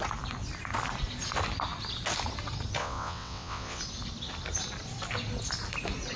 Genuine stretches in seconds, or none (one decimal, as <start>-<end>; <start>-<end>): 0.0-2.8; 3.8-6.2